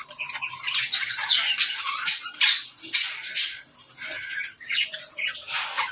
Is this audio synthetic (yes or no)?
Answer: no